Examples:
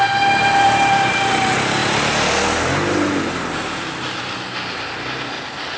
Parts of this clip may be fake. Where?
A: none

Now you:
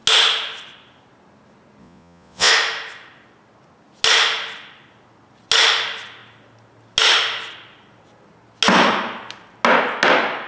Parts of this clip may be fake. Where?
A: 1.8-2.5 (vocoder, Vocos)

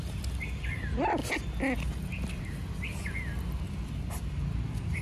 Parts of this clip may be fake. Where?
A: none

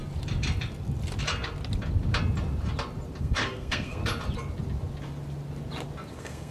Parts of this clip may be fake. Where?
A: 3.2-4.0 (codec, SNAC); 6.1-6.5